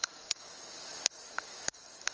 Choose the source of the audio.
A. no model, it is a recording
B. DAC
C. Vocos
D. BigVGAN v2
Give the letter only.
B